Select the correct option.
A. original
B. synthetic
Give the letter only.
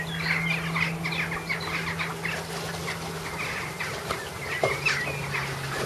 A